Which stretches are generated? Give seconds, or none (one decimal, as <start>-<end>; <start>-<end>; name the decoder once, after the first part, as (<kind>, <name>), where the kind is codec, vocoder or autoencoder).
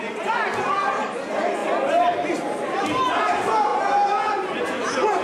none